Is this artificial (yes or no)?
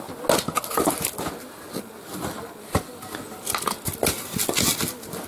no